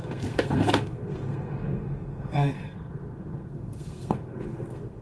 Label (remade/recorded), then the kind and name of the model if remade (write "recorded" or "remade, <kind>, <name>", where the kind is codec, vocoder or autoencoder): remade, codec, SNAC